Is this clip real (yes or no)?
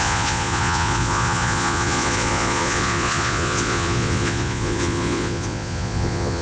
no